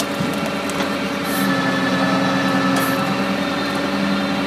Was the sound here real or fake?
real